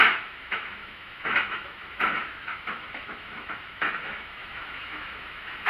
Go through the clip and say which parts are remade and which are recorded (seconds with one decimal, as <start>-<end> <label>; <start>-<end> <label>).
0.0-5.7 remade